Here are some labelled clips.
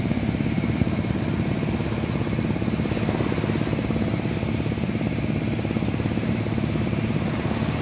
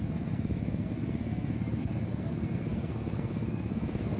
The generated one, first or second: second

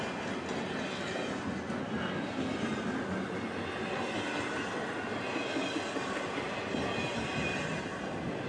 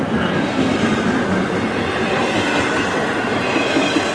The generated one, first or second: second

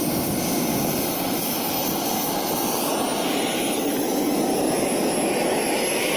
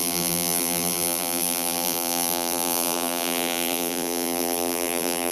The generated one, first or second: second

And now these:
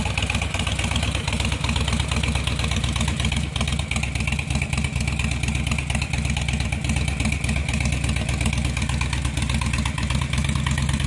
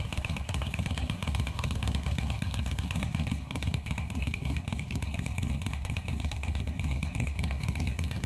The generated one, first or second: second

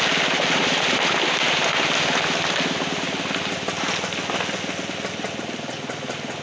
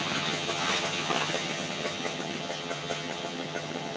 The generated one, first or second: second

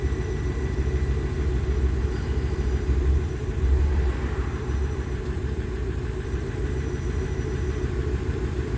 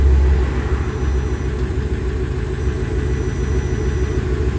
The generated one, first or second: first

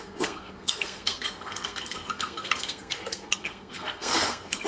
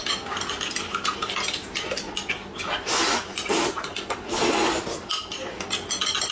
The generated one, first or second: first